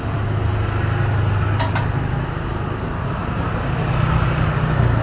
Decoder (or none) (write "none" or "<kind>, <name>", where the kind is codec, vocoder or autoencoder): none